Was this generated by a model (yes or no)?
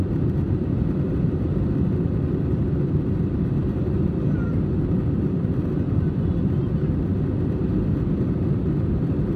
no